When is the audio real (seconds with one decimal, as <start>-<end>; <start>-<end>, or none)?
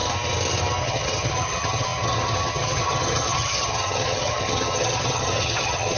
0.0-0.8